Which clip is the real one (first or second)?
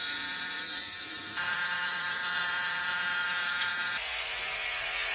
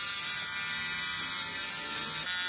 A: second